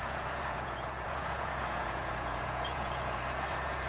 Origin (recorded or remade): remade